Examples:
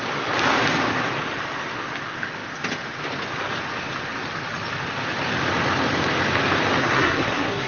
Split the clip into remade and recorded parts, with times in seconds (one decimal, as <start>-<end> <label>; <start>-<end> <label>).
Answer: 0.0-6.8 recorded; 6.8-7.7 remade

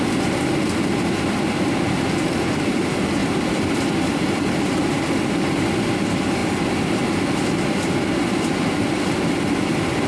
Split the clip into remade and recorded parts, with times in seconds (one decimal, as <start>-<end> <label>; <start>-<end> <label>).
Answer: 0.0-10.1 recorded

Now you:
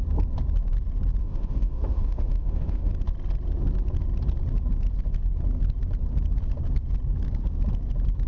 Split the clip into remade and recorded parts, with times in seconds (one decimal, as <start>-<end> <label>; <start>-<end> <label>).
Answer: 0.0-1.2 recorded; 1.2-2.9 remade; 2.9-8.3 recorded

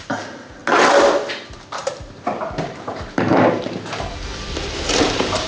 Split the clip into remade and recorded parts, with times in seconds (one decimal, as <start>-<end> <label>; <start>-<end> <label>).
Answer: 0.0-0.6 remade; 0.6-1.3 recorded; 1.3-5.5 remade

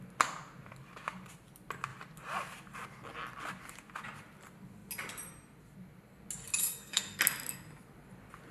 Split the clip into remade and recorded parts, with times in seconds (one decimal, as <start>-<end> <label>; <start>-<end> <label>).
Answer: 0.0-6.6 recorded; 6.6-7.2 remade; 7.2-8.5 recorded